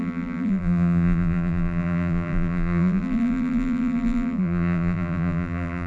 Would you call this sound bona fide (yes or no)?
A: no